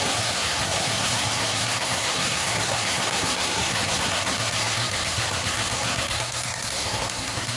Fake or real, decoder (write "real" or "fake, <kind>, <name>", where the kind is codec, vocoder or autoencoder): fake, codec, SNAC